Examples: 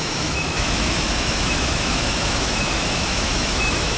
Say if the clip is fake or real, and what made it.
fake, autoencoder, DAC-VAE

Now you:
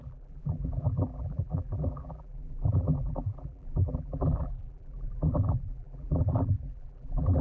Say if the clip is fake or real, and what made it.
fake, vocoder, BigVGAN v2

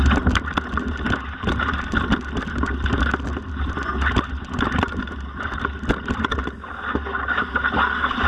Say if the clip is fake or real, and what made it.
real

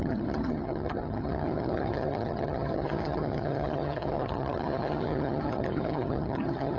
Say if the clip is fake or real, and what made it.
fake, vocoder, HiFi-GAN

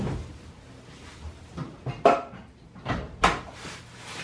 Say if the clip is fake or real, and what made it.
real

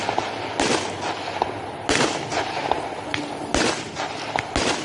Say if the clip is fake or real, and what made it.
real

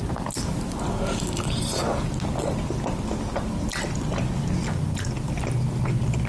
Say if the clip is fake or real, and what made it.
real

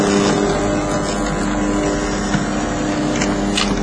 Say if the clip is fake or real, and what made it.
real